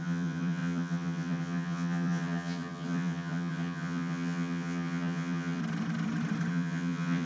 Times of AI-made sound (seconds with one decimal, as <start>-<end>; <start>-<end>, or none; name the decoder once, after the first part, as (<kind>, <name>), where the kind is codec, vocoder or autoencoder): 0.0-5.6 (vocoder, HiFi-GAN); 6.5-7.3